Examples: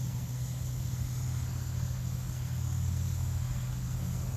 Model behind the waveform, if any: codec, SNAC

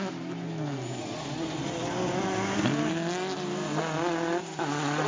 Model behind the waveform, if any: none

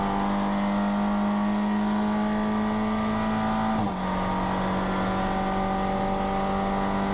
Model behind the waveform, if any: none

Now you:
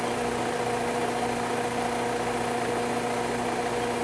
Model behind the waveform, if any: none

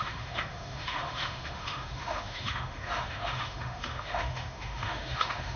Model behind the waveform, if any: autoencoder, DAC-VAE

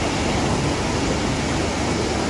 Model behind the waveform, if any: none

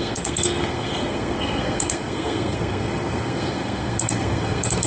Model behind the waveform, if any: codec, SNAC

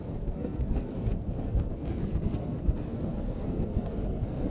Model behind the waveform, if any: codec, SNAC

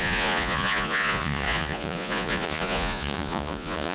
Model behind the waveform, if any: vocoder, Vocos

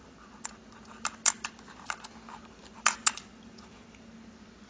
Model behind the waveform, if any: none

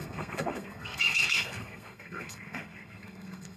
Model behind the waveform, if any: codec, SNAC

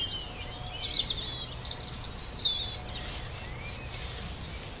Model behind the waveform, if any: none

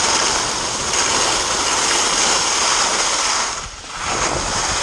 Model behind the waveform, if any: none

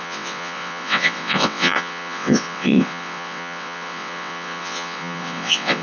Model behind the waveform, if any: vocoder, WaveNeXt